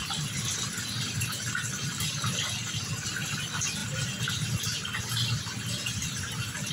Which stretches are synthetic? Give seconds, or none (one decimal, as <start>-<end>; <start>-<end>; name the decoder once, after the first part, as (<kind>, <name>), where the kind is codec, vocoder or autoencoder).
none